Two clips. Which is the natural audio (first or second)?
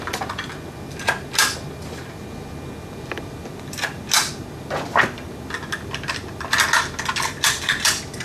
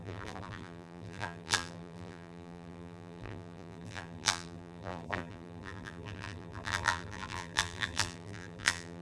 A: first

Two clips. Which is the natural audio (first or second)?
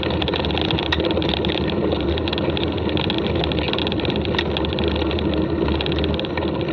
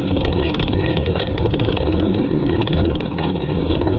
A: first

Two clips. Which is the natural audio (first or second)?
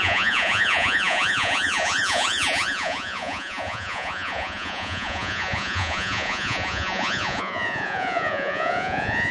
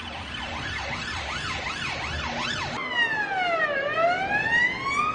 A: second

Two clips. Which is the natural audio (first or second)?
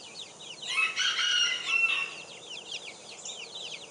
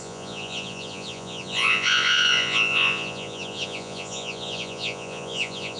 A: first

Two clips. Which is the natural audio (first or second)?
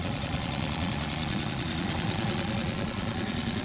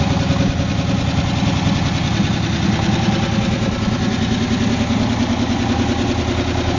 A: second